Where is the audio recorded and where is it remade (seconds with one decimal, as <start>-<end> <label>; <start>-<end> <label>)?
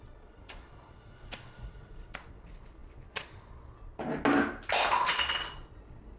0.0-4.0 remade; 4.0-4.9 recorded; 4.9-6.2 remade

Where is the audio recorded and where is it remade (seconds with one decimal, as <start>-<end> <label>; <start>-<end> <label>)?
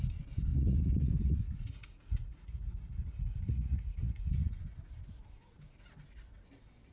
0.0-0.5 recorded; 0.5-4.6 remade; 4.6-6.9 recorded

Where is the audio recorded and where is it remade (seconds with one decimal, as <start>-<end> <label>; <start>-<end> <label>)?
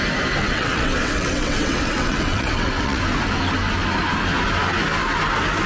0.0-0.4 recorded; 0.4-3.0 remade; 3.0-5.7 recorded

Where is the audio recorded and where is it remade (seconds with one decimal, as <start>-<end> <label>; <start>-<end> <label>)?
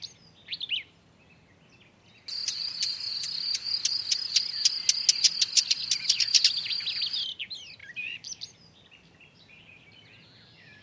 0.0-7.8 recorded; 7.8-9.6 remade; 9.6-10.8 recorded